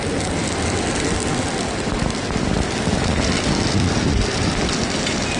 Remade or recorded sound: recorded